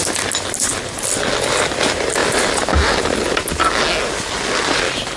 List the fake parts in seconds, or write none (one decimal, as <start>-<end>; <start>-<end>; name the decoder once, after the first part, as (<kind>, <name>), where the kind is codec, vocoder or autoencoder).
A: none